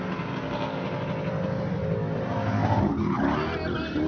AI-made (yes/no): no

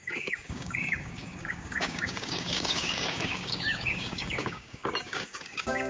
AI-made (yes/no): yes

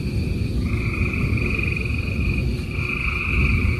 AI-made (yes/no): no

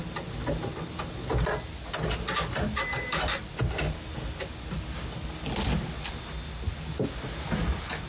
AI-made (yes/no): no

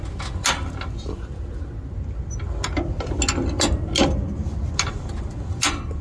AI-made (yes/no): no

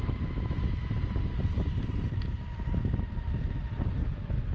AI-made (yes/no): no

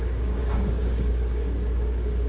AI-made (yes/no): yes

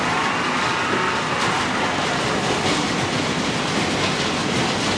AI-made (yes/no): no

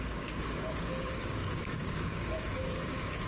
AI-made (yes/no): yes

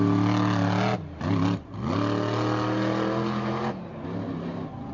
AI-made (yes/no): no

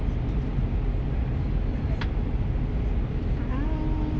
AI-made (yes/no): no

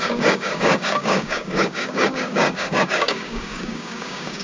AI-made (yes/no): yes